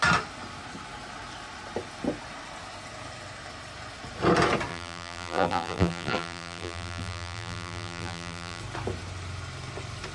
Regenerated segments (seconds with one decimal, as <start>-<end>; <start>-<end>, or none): 4.7-8.6